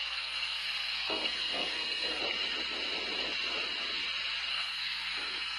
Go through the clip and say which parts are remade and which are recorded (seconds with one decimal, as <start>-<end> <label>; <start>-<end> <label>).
0.0-2.2 remade; 2.2-4.5 recorded; 4.5-5.6 remade